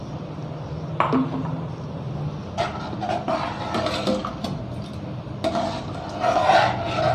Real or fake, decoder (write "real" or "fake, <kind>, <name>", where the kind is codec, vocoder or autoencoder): real